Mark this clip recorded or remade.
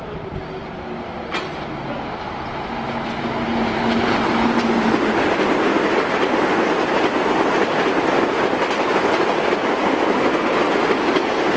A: recorded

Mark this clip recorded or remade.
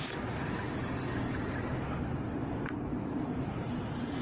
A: remade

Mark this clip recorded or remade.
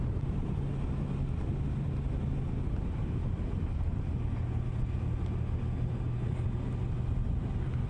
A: recorded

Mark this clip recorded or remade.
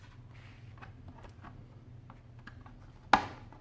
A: recorded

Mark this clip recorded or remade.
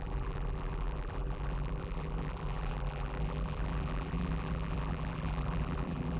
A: remade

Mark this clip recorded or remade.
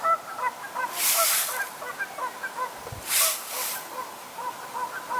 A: recorded